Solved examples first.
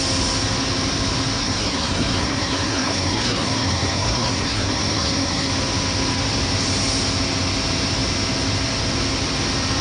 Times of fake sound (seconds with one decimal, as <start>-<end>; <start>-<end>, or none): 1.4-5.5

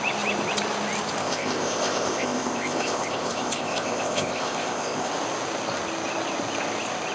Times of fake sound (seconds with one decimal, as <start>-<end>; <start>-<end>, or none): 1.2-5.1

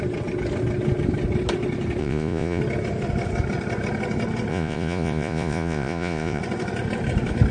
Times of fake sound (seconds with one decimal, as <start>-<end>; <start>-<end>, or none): 2.0-2.6; 4.5-6.4

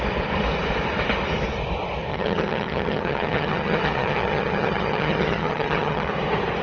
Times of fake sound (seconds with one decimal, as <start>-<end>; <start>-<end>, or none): 2.1-6.1

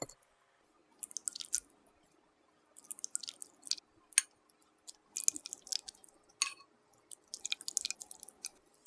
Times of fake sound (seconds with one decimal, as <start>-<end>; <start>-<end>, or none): none

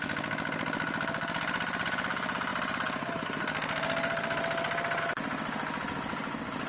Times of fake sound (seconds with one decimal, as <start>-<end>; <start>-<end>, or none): none

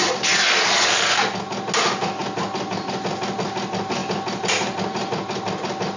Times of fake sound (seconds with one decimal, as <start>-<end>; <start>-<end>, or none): none

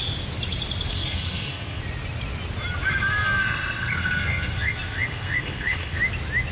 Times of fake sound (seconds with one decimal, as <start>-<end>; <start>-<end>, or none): 0.9-1.8; 2.9-6.0